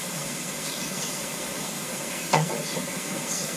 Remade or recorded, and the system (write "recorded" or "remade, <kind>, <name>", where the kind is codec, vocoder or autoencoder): remade, codec, SNAC